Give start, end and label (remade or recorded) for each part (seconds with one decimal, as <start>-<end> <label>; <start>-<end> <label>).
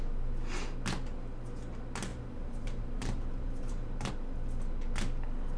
0.0-2.1 recorded; 2.1-4.1 remade; 4.1-5.6 recorded